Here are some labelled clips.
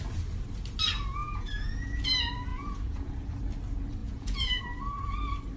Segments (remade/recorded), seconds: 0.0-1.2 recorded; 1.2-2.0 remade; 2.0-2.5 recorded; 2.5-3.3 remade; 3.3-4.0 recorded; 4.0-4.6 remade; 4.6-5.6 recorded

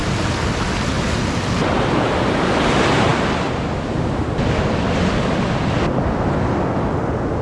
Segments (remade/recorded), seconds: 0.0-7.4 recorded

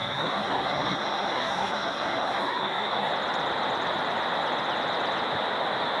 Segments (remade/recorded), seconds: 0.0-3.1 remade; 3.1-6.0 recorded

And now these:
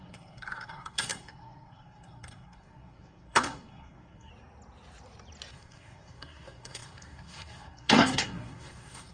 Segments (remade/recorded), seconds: 0.0-4.3 remade; 4.3-5.5 recorded; 5.5-9.1 remade

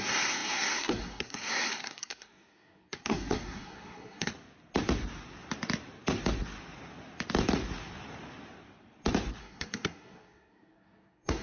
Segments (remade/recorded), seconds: 0.0-4.3 remade; 4.3-9.4 recorded; 9.4-11.4 remade

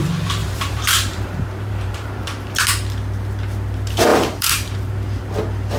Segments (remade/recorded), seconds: 0.0-0.4 recorded; 0.4-2.1 remade; 2.1-4.1 recorded; 4.1-4.9 remade; 4.9-5.8 recorded